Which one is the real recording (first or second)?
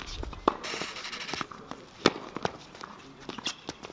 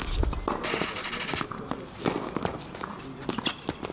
second